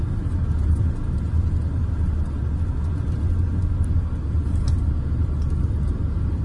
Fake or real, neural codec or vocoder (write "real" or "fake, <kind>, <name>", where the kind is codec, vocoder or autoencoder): real